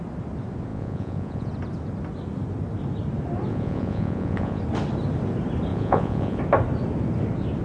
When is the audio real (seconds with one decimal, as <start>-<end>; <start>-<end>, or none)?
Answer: 0.0-0.7; 1.5-3.5; 4.6-5.7; 6.4-7.6